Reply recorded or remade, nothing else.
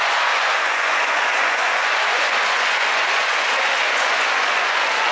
remade